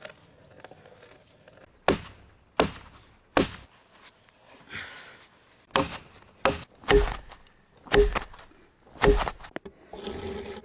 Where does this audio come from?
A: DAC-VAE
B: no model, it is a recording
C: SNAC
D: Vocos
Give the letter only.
B